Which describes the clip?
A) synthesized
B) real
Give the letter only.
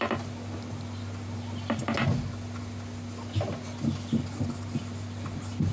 B